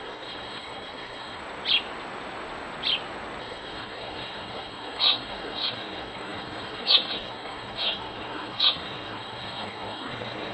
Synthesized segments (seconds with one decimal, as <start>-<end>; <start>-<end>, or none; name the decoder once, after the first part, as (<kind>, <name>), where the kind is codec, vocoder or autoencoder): 0.0-1.4 (codec, SNAC); 3.4-10.5